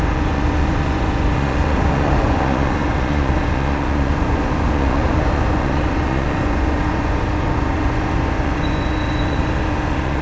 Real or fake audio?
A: fake